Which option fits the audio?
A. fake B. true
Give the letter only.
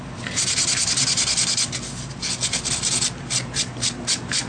B